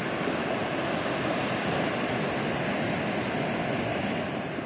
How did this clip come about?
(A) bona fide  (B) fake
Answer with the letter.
A